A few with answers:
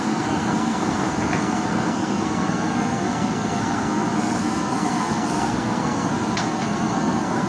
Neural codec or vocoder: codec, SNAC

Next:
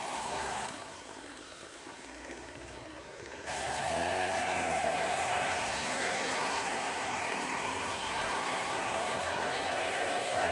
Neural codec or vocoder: codec, SNAC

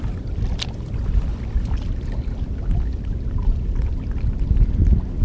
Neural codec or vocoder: none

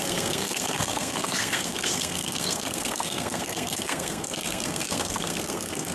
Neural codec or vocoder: codec, SNAC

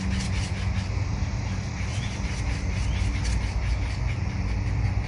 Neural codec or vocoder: none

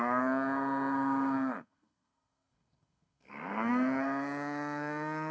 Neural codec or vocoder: codec, SNAC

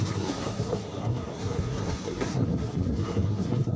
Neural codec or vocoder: codec, SNAC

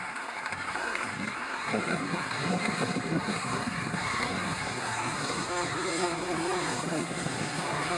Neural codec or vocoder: codec, SNAC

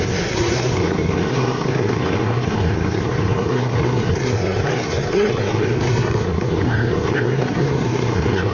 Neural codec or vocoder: codec, SNAC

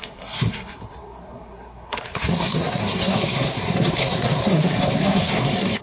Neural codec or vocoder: codec, SNAC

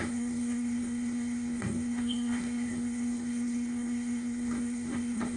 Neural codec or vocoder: codec, SNAC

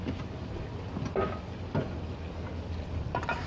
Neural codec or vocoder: none